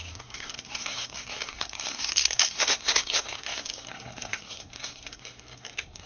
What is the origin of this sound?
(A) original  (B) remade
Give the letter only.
B